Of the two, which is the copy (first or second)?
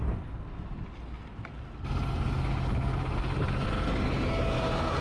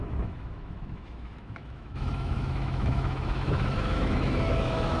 second